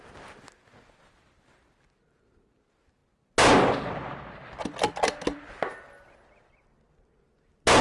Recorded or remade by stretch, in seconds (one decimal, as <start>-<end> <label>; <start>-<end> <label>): 0.0-7.8 recorded